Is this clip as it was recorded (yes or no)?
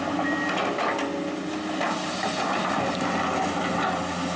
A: yes